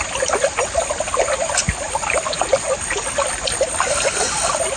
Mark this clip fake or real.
real